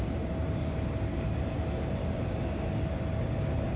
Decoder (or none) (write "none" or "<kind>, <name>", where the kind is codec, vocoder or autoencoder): none